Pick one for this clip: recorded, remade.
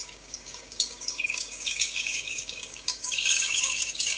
remade